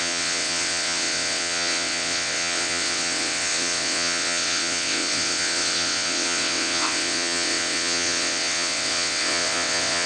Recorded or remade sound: remade